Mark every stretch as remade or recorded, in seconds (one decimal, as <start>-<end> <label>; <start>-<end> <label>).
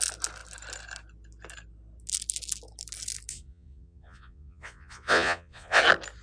0.0-3.3 recorded; 3.3-5.8 remade; 5.8-6.2 recorded